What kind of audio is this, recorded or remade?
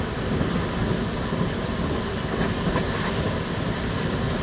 recorded